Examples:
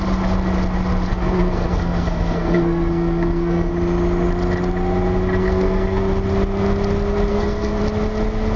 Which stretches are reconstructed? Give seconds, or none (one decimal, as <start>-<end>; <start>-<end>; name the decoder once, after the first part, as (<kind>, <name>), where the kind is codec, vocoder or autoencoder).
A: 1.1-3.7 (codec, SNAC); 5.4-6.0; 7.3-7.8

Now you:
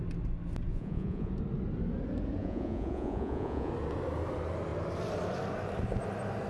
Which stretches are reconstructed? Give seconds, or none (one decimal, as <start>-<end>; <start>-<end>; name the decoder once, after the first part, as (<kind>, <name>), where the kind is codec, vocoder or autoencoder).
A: 0.7-1.3 (vocoder, Vocos); 2.4-3.7

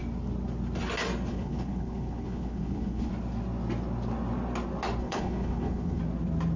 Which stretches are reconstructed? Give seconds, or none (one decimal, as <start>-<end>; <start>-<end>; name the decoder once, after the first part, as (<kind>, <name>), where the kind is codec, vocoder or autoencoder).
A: 1.3-3.1 (codec, HILCodec); 5.0-6.0

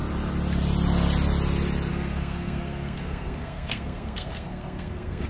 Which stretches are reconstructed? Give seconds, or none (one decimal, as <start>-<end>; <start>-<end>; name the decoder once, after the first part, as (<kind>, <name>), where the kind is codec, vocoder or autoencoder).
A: 1.9-5.3 (codec, SNAC)

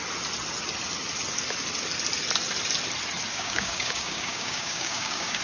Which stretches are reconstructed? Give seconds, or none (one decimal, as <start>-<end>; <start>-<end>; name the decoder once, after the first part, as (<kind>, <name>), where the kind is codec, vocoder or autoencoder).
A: 3.3-5.4 (codec, DAC)

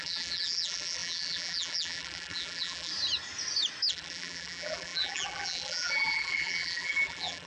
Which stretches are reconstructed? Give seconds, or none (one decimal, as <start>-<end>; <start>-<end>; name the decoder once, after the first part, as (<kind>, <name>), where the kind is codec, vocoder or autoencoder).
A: 0.0-2.9 (vocoder, BigVGAN v2); 3.9-7.5

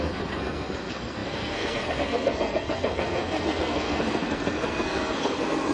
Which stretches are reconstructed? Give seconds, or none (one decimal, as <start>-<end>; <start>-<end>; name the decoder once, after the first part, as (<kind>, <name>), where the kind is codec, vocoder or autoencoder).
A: 0.0-5.7 (codec, SNAC)

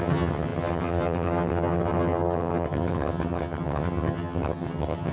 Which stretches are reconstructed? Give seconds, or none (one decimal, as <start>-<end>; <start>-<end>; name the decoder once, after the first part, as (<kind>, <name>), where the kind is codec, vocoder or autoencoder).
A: 0.0-5.1 (vocoder, HiFi-GAN)